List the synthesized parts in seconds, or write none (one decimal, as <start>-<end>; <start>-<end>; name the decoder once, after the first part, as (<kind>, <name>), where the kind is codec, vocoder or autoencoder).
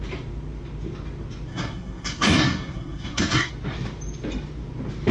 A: 1.5-3.5 (codec, SNAC)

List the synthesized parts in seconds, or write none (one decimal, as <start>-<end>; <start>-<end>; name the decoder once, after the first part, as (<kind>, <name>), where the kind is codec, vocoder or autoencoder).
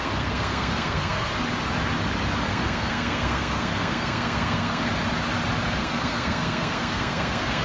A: 0.0-1.3 (codec, SNAC); 2.5-4.9; 5.8-7.6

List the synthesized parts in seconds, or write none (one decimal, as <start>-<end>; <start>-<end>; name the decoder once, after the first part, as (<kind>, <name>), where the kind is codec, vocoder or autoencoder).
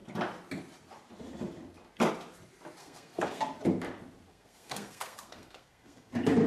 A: 2.8-3.4 (codec, SNAC); 4.3-6.1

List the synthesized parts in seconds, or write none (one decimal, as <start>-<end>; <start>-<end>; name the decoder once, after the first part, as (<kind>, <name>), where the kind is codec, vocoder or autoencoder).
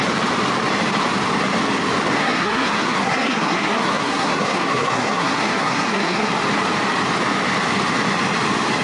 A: 2.2-6.3 (codec, SNAC)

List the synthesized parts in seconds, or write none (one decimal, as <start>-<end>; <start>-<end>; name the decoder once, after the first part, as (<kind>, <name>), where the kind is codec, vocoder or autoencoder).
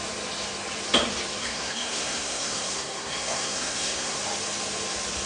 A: 1.4-4.2 (codec, SNAC)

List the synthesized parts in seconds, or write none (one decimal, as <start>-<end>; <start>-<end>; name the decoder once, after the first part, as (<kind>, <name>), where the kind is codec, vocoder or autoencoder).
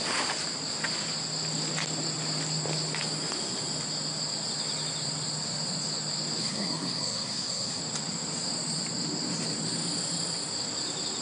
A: 6.4-7.8 (codec, SNAC)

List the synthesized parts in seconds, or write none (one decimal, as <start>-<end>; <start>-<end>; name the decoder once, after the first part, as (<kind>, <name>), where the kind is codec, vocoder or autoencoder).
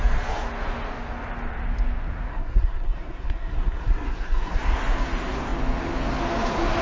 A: 2.3-4.6 (codec, SNAC)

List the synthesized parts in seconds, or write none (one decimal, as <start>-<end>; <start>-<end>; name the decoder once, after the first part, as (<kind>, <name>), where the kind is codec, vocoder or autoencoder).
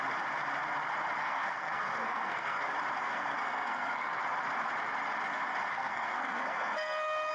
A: 1.2-2.6 (codec, SNAC); 3.0-4.2; 5.7-7.3